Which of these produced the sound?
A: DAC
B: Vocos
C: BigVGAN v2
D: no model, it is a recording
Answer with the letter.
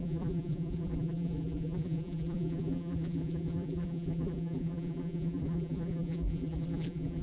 C